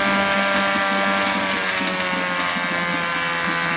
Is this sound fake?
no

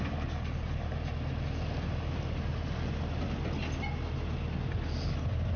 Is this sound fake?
no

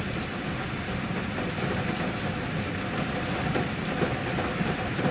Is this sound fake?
no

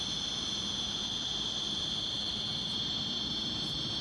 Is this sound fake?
yes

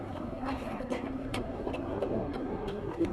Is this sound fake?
yes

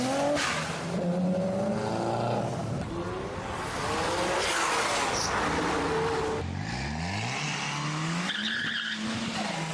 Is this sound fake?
no